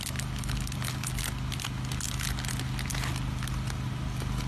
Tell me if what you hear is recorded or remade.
recorded